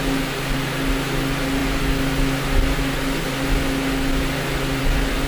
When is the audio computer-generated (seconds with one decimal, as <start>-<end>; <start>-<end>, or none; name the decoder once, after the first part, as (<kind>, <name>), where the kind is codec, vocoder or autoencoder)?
none